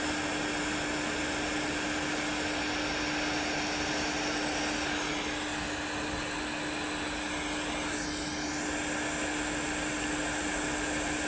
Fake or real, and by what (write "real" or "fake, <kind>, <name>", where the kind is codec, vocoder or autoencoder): real